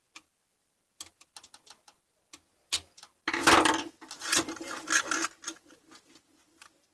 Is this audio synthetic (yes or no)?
no